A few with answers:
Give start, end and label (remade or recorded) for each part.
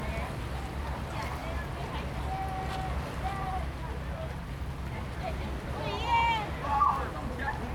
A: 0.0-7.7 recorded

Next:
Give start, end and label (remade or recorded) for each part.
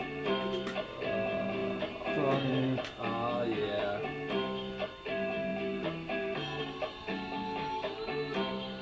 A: 0.0-8.8 recorded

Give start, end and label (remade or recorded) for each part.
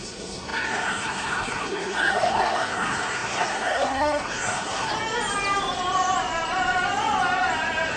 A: 0.0-4.9 remade; 4.9-8.0 recorded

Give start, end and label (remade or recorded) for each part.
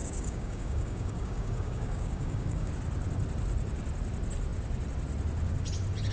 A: 0.0-2.7 remade; 2.7-6.1 recorded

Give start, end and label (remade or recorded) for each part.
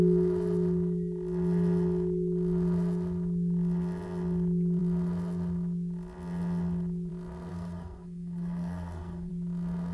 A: 0.0-7.5 recorded; 7.5-9.3 remade; 9.3-9.9 recorded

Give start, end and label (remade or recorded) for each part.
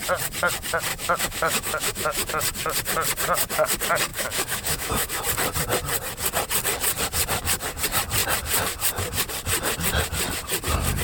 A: 0.0-0.9 recorded; 0.9-2.3 remade; 2.3-4.1 recorded; 4.1-5.2 remade; 5.2-11.0 recorded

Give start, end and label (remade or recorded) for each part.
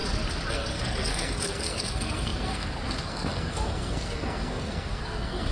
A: 0.0-0.5 recorded; 0.5-5.5 remade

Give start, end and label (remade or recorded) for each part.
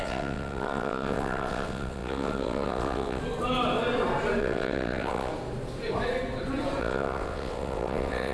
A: 0.0-3.2 remade; 3.2-4.4 recorded; 4.4-5.3 remade; 5.3-6.8 recorded; 6.8-8.3 remade